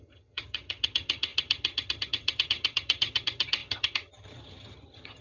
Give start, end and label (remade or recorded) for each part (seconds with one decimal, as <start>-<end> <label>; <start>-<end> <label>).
0.0-5.2 remade